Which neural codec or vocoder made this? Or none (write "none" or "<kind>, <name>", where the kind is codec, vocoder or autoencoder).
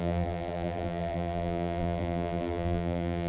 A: vocoder, BigVGAN v2